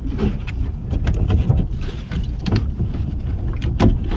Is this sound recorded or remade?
recorded